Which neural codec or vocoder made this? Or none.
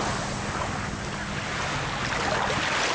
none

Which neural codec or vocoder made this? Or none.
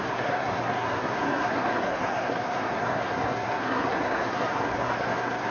codec, SNAC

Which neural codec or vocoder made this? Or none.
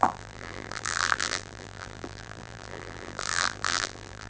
vocoder, BigVGAN v2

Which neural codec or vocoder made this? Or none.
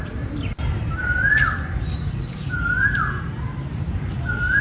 vocoder, BigVGAN v2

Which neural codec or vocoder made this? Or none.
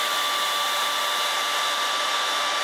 none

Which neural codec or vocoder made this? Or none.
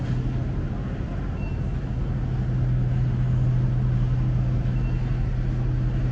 none